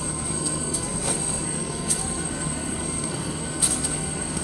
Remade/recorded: remade